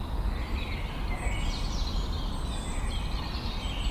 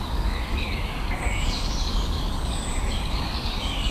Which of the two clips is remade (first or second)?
second